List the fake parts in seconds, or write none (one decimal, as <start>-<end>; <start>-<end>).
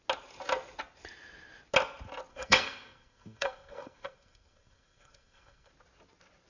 2.3-5.7